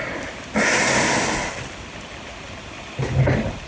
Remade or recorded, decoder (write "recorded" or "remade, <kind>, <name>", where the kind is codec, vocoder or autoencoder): recorded